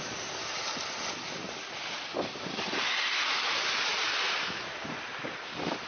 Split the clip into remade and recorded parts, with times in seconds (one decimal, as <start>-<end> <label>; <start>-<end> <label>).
0.0-5.9 recorded